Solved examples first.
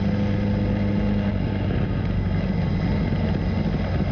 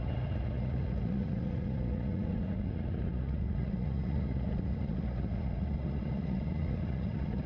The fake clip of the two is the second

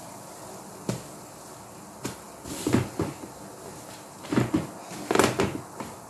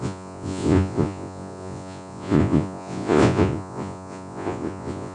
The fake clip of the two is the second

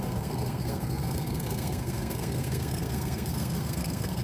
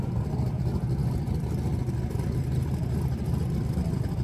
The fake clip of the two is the first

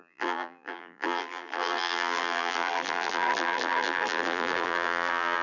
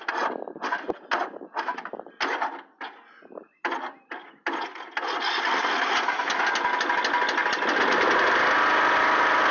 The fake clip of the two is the first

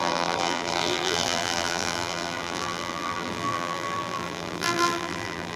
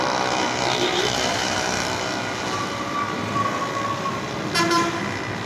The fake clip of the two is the first